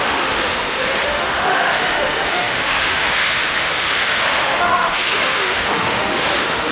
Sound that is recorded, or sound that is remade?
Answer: remade